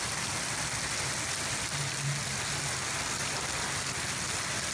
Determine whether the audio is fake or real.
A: real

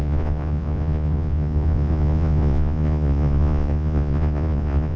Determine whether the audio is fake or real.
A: fake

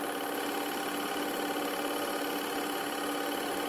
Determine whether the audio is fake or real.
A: real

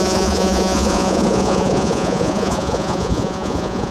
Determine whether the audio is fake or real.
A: fake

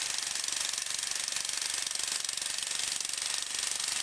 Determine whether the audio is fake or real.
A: real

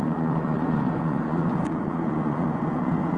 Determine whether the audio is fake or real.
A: fake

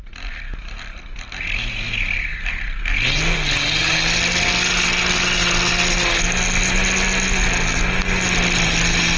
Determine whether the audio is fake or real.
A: real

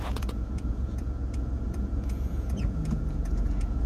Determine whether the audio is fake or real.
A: fake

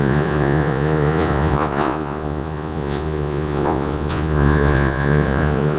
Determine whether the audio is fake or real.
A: fake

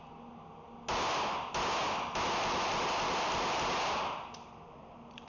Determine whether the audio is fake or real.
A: real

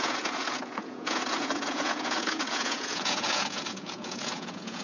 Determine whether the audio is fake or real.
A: fake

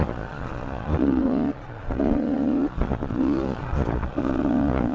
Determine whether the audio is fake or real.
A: fake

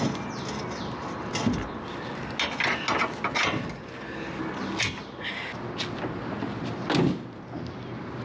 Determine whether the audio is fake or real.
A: real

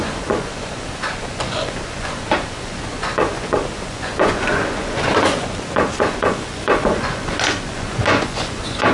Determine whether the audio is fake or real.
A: fake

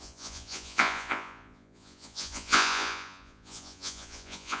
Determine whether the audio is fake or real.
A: fake